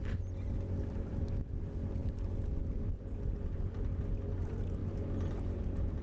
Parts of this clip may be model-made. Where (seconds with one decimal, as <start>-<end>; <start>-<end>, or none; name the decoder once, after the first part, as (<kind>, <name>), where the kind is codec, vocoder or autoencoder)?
1.1-1.6 (autoencoder, DAC-VAE)